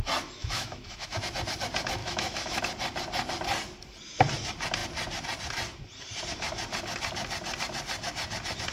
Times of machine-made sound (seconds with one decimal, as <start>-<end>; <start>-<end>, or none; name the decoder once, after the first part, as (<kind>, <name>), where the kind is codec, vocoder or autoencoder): 0.4-1.2 (autoencoder, DAC-VAE); 2.0-2.6